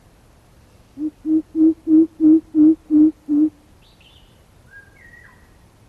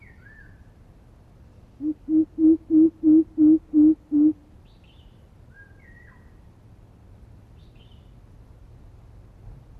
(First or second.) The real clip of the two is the second